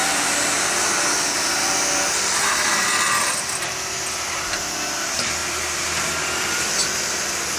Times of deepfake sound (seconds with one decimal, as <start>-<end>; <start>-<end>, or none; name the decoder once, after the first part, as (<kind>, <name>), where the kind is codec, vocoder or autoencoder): 5.4-6.1 (vocoder, BigVGAN v2)